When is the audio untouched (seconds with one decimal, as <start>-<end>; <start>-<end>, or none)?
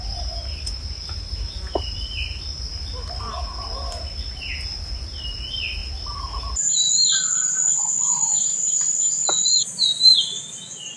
0.0-8.3; 9.1-11.0